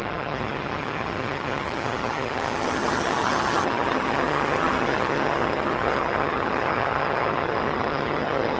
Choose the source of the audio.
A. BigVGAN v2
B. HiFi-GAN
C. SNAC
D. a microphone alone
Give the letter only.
B